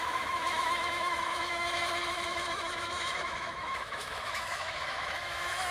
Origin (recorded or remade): remade